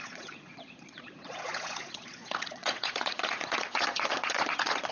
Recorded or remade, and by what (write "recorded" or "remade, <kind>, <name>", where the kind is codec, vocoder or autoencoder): remade, vocoder, Vocos